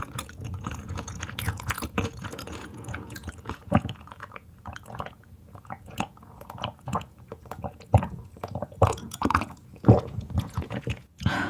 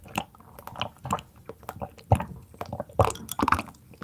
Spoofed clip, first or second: first